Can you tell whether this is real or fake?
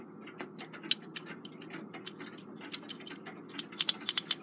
real